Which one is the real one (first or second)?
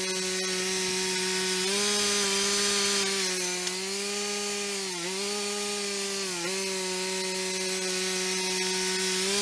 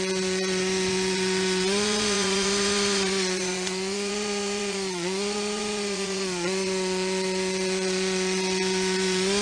first